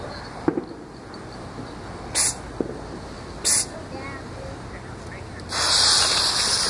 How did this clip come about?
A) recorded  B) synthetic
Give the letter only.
A